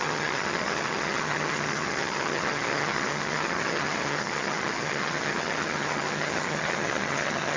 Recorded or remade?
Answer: remade